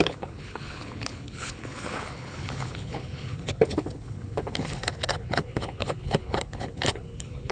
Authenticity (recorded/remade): remade